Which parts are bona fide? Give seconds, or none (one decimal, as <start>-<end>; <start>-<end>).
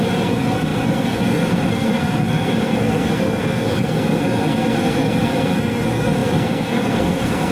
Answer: none